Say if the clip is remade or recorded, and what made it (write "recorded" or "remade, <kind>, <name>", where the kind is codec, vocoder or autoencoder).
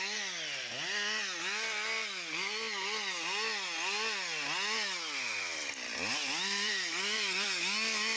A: recorded